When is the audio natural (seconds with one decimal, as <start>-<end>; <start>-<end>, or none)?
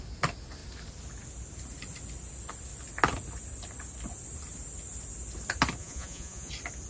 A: 0.0-5.8; 6.5-6.9